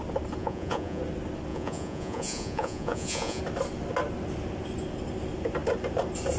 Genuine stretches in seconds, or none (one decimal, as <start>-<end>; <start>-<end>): 0.0-0.4; 1.0-1.5; 3.4-6.4